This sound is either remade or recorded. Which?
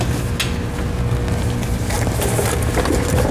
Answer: recorded